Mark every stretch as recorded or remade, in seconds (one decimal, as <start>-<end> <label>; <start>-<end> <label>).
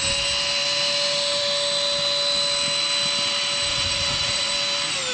0.0-3.7 recorded; 3.7-4.5 remade; 4.5-5.1 recorded